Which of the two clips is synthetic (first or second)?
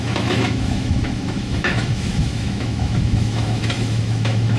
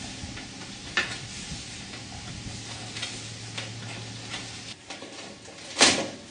first